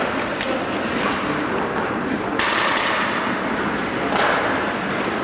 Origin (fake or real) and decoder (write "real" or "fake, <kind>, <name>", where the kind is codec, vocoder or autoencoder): fake, vocoder, BigVGAN v2